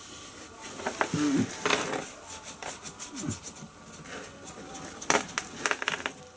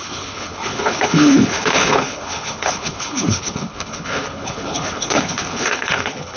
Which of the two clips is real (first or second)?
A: first